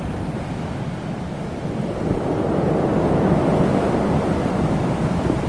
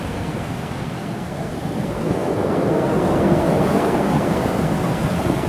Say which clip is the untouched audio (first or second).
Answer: first